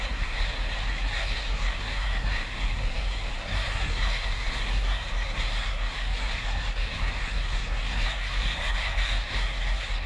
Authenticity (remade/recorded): remade